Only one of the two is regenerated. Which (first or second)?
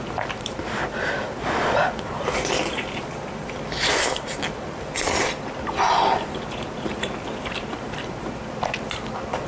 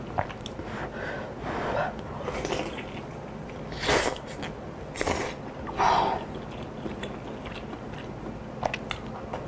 first